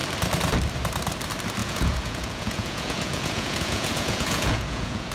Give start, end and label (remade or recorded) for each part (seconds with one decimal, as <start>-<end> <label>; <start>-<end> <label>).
0.0-1.6 recorded; 1.6-5.1 remade